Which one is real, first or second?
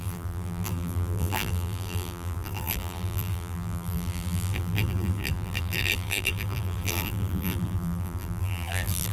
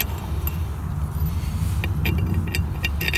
second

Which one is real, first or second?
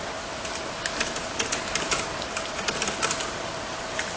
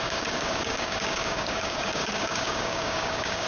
first